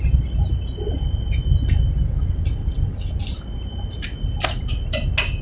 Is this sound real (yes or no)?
yes